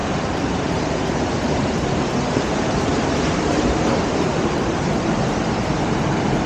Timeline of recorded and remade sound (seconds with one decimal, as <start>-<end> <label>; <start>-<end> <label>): 0.0-2.0 remade; 2.0-2.9 recorded; 2.9-5.4 remade; 5.4-6.5 recorded